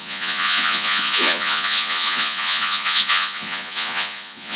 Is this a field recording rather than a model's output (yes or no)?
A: no